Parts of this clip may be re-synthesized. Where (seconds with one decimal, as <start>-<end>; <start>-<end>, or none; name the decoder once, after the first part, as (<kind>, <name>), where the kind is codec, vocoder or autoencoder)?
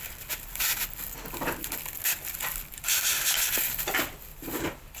4.3-5.0 (vocoder, BigVGAN v2)